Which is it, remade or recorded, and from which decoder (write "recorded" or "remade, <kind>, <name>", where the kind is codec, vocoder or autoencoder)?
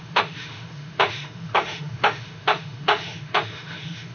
remade, autoencoder, DAC-VAE